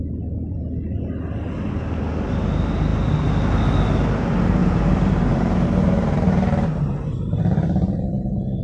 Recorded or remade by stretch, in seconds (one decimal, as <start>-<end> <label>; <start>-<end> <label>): 0.0-4.6 recorded; 4.6-8.0 remade; 8.0-8.6 recorded